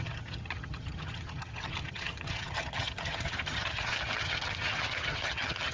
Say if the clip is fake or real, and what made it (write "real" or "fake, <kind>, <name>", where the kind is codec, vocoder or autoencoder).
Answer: fake, vocoder, HiFi-GAN